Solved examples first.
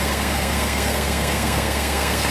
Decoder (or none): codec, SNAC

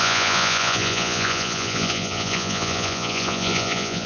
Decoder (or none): vocoder, Vocos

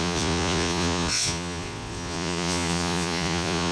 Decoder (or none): vocoder, Vocos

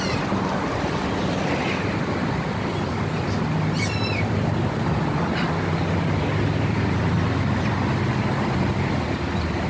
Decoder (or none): none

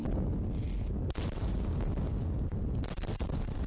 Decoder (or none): none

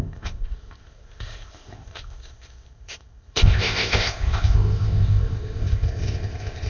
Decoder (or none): codec, ZipCodec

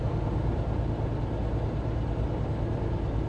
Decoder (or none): none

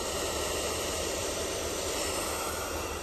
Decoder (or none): vocoder, BigVGAN v2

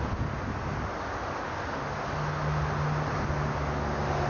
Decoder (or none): none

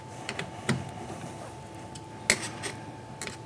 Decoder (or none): none